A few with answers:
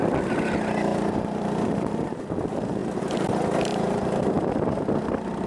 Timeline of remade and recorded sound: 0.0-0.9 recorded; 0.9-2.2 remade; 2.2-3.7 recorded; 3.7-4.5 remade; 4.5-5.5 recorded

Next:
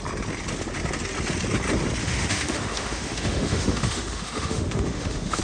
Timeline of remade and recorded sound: 0.0-2.0 recorded; 2.0-5.4 remade